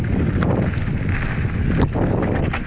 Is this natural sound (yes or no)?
yes